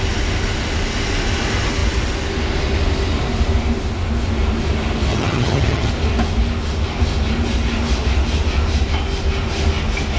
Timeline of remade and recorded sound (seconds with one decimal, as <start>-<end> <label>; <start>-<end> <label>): 0.0-5.1 recorded; 5.1-5.9 remade; 5.9-10.2 recorded